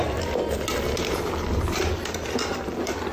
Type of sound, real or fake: real